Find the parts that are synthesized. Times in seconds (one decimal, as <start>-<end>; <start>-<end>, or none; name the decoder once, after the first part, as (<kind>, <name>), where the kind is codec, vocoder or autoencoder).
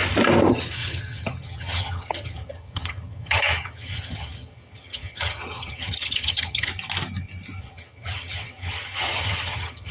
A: 0.5-6.7 (vocoder, HiFi-GAN); 7.6-9.9